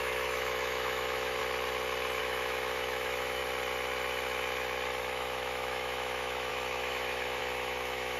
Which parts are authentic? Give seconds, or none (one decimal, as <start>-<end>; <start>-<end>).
1.4-2.2; 3.4-5.0